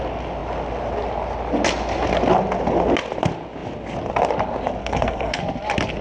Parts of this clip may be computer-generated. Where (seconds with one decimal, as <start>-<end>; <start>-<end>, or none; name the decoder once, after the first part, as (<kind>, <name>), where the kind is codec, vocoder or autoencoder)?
4.8-5.4 (codec, SNAC)